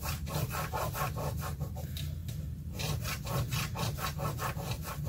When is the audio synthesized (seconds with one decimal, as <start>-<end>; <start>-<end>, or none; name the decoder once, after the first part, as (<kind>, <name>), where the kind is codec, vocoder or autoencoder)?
none